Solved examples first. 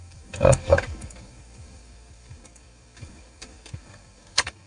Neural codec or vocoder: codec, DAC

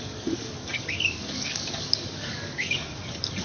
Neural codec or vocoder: codec, DAC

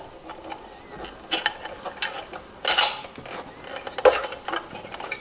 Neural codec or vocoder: none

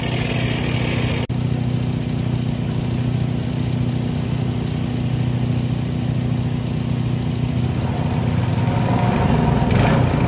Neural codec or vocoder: none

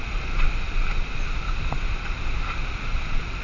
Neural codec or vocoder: none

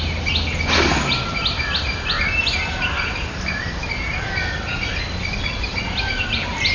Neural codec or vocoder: none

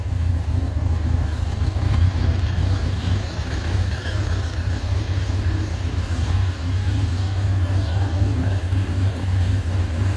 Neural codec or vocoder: codec, DAC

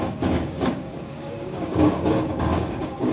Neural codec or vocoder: codec, DAC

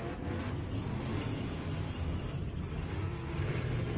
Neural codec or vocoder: none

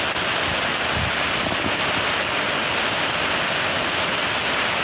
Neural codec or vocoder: none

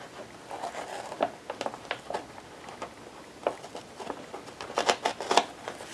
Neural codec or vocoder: none